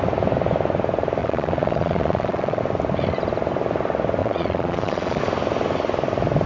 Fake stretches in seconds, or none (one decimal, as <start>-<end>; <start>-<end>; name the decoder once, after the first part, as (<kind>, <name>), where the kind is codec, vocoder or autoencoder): 1.2-2.6 (vocoder, Vocos); 4.2-5.2